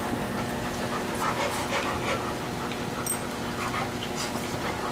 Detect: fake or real real